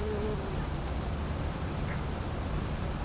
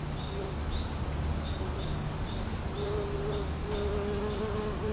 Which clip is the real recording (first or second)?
second